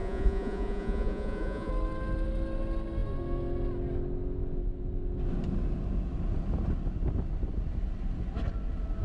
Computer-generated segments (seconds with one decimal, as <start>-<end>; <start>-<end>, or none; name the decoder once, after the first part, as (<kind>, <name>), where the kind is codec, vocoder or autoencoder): 0.0-1.7 (vocoder, Vocos)